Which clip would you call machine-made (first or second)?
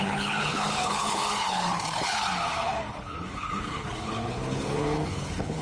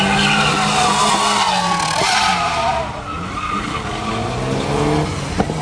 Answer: first